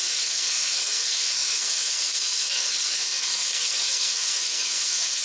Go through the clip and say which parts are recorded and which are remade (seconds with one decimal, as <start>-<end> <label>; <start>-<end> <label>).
0.0-5.2 remade